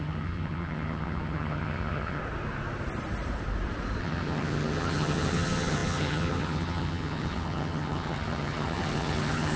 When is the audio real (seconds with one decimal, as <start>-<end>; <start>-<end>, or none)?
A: 2.2-4.0